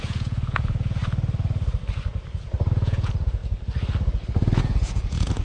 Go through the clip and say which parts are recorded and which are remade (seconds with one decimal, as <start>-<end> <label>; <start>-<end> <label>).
0.0-1.0 remade; 1.0-2.7 recorded; 2.7-3.4 remade; 3.4-4.6 recorded; 4.6-5.4 remade